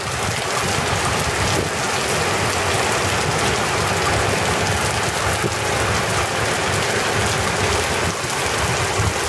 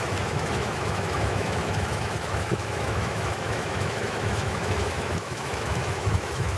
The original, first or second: first